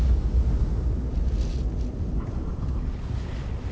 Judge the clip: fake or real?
real